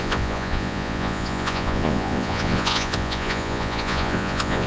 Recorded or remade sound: remade